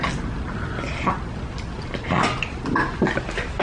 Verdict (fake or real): real